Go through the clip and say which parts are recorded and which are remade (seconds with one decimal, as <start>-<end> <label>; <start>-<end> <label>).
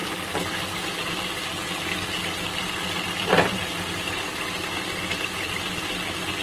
0.0-2.5 recorded; 2.5-4.6 remade; 4.6-6.4 recorded